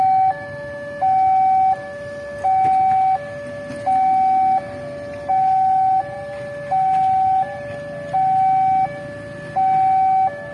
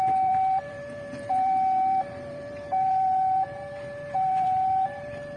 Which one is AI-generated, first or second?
second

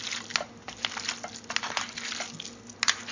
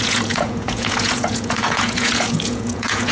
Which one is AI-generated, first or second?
second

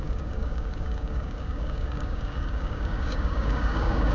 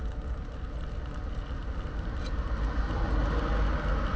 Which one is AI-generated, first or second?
first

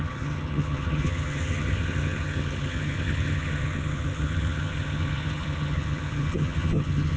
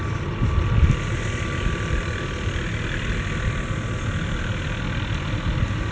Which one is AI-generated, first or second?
first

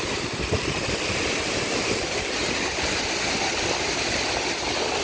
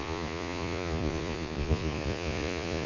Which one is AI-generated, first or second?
second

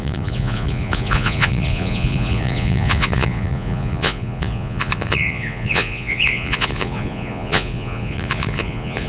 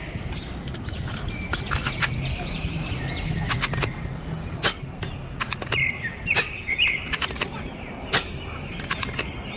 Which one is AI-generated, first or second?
first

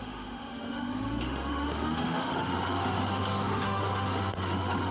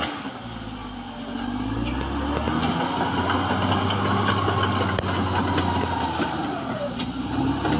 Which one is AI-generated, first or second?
first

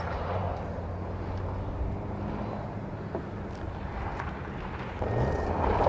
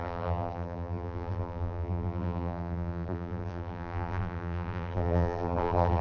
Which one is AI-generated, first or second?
second